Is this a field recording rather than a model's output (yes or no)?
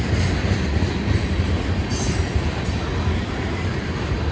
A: yes